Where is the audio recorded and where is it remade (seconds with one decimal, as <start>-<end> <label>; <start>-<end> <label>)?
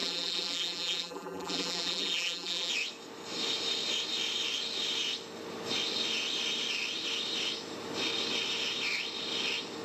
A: 0.0-2.7 remade; 2.7-9.8 recorded